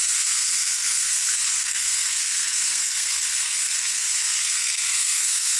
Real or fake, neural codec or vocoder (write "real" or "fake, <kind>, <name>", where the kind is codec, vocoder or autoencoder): fake, codec, SNAC